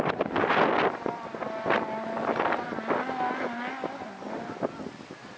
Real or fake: real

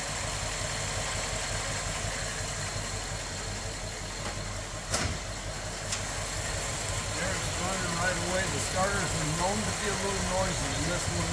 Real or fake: real